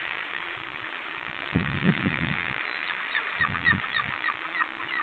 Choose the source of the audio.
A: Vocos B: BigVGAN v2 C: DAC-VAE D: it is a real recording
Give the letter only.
A